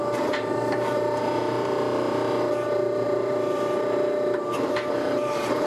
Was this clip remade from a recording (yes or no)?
yes